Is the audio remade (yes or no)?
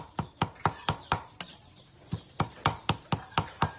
no